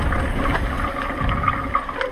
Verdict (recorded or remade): recorded